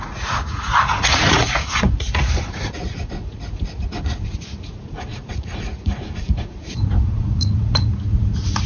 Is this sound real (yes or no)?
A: no